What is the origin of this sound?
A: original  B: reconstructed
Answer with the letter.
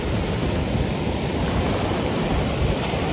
B